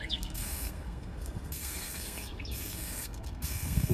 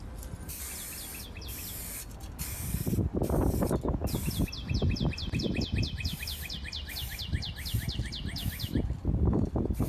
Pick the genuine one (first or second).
second